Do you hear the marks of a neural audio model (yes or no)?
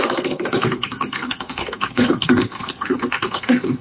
yes